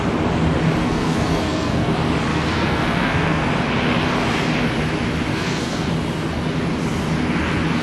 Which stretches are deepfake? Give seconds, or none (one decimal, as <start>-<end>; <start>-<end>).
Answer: 0.8-1.9; 2.3-3.4; 5.3-5.9